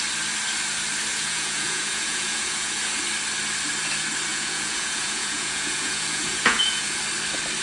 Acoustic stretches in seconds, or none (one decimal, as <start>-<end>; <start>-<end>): 0.0-1.1; 3.0-4.3; 7.0-7.6